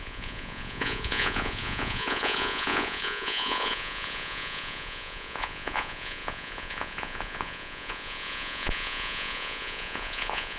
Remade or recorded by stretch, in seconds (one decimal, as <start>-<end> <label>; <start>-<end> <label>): 0.0-10.6 remade